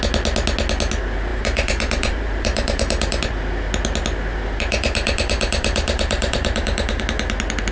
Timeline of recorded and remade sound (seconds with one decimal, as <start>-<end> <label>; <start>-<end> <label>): 0.0-1.3 recorded; 1.3-3.3 remade; 3.3-4.3 recorded; 4.3-7.0 remade; 7.0-7.7 recorded